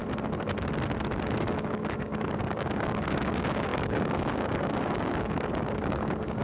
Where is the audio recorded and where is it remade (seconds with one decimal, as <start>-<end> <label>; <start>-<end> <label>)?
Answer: 0.0-1.5 recorded; 1.5-6.4 remade